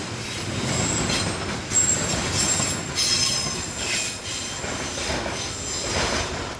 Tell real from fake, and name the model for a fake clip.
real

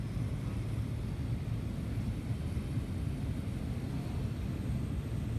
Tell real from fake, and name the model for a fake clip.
real